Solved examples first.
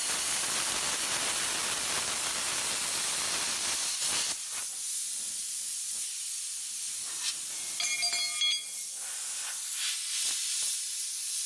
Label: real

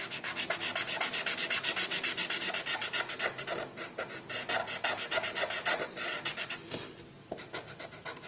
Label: real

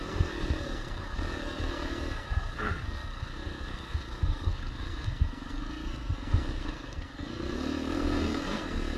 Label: fake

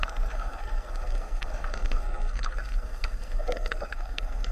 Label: fake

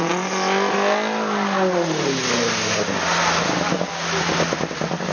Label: real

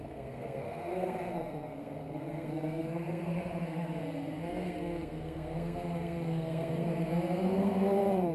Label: fake